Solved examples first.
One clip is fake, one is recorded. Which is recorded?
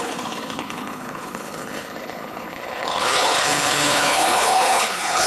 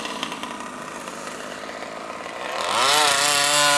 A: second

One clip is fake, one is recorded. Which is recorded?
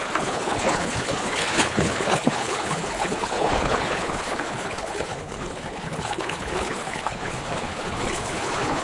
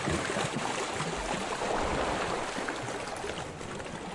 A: second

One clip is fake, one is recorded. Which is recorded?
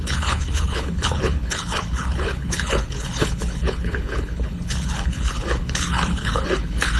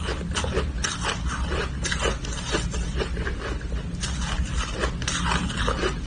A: second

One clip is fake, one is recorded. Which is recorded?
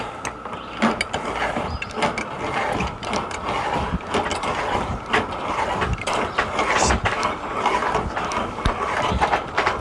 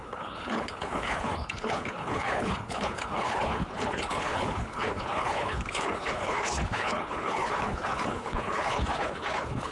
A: first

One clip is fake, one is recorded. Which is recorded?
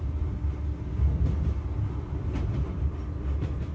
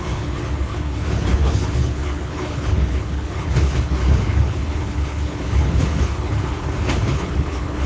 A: first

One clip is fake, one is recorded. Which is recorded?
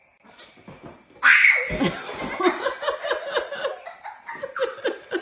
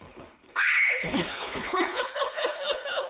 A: first